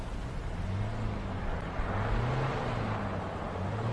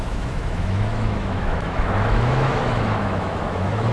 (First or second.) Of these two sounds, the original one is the first